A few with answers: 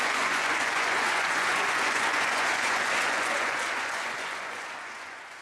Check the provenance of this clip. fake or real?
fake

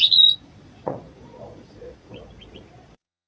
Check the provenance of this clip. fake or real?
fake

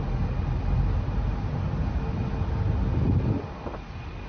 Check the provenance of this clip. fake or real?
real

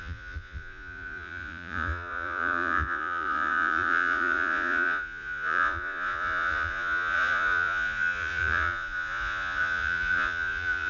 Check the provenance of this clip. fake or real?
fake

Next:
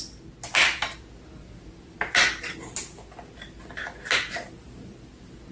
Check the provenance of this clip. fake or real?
real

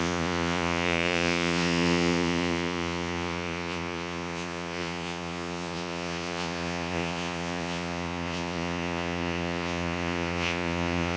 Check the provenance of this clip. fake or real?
fake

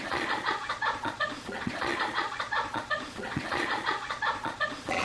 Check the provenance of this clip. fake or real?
fake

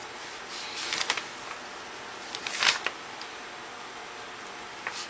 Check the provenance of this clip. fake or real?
real